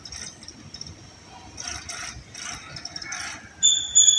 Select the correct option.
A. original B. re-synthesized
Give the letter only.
A